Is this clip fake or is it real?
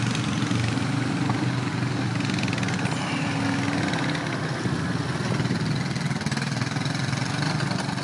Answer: real